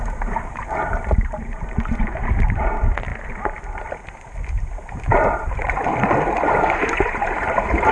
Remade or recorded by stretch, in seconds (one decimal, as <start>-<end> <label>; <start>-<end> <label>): 0.0-3.1 remade; 3.1-4.9 recorded; 4.9-5.9 remade; 5.9-6.7 recorded; 6.7-7.9 remade